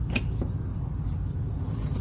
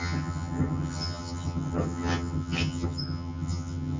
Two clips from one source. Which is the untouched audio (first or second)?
first